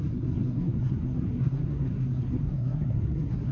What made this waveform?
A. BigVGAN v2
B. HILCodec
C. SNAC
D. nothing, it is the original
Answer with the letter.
C